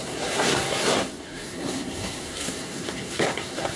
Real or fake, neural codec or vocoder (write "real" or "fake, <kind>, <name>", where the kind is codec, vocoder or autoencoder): fake, codec, SNAC